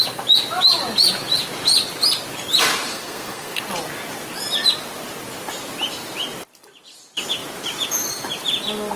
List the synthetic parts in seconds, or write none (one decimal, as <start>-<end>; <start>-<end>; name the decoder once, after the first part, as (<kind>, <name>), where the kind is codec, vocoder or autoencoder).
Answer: 2.9-3.6 (codec, SNAC)